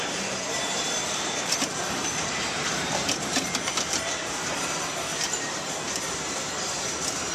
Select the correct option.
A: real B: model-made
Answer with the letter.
B